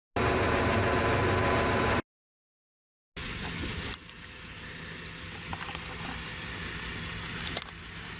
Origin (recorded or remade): recorded